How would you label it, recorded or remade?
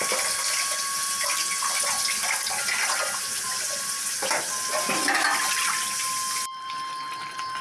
recorded